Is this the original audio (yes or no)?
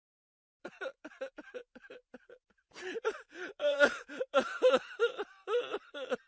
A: no